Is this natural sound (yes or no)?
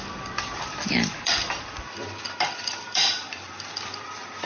no